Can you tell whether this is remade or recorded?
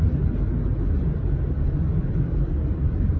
recorded